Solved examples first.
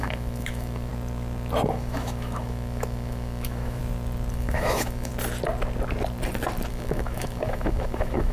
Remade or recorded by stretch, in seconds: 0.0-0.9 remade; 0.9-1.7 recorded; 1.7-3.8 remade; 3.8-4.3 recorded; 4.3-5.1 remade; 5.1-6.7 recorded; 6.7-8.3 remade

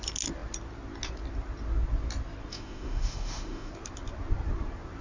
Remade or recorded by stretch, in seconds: 0.0-2.5 recorded; 2.5-3.7 remade; 3.7-5.0 recorded

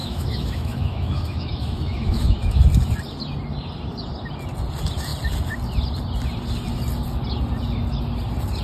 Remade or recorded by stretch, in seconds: 0.0-2.6 remade; 2.6-8.6 recorded

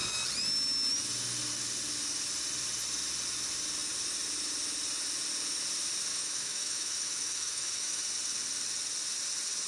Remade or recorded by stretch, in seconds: 0.0-6.1 recorded; 6.1-8.0 remade; 8.0-9.7 recorded